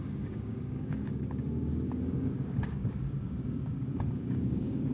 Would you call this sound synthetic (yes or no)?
yes